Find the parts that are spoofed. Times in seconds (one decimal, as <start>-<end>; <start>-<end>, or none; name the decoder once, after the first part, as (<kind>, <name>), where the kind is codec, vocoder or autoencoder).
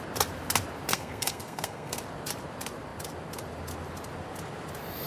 0.9-2.0 (codec, SNAC)